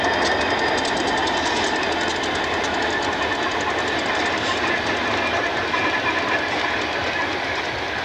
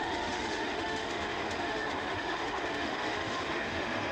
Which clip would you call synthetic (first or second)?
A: second